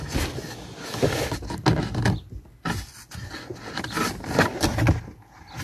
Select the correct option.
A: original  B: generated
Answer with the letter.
A